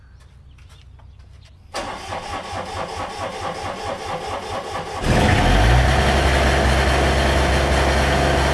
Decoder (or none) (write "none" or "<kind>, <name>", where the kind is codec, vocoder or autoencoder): none